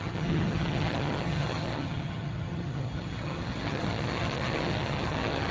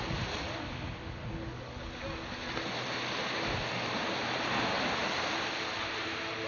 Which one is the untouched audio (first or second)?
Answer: second